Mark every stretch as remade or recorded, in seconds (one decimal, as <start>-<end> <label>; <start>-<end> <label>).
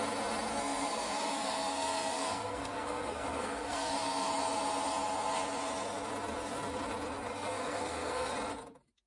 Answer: 0.0-0.5 recorded; 0.5-4.3 remade; 4.3-7.3 recorded; 7.3-8.3 remade; 8.3-9.1 recorded